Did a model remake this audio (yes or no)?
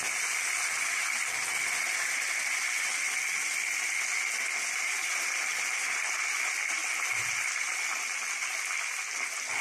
no